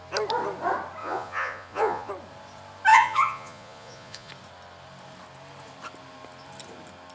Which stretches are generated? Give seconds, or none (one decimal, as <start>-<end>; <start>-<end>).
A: 1.0-2.1; 2.9-4.3